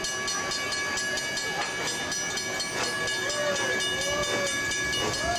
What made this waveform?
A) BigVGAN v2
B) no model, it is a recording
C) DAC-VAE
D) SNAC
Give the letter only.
B